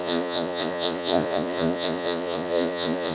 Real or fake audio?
fake